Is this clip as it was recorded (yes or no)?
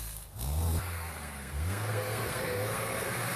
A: no